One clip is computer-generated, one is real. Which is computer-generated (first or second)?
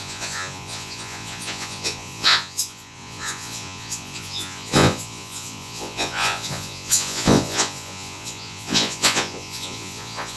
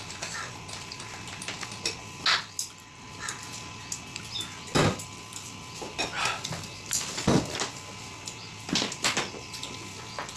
first